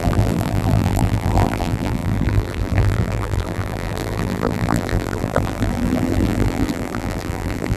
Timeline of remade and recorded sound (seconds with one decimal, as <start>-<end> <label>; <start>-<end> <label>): 0.0-7.8 remade